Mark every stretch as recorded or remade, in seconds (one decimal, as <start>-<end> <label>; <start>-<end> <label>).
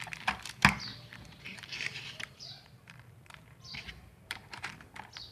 0.0-1.5 recorded; 1.5-4.7 remade; 4.7-5.3 recorded